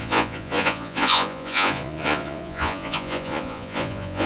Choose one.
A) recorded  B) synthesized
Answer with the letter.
B